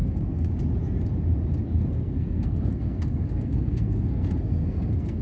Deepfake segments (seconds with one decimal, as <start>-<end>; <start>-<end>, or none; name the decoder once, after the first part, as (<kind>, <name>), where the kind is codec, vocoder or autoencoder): 0.0-0.5 (codec, SNAC); 1.8-5.2